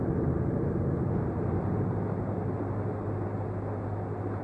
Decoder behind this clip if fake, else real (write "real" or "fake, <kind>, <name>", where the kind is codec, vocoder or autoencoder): real